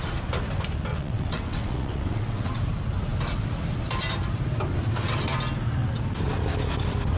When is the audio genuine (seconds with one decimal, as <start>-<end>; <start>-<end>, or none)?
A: 0.0-0.9; 2.6-7.2